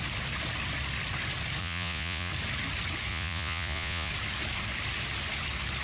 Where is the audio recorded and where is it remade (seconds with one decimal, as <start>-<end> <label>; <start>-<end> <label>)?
0.0-1.6 recorded; 1.6-2.3 remade; 2.3-3.1 recorded; 3.1-4.1 remade; 4.1-5.8 recorded